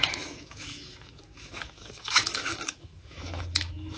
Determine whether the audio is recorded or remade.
remade